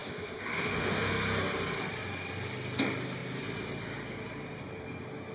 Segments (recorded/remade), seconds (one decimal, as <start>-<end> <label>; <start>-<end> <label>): 0.0-1.1 remade; 1.1-5.3 recorded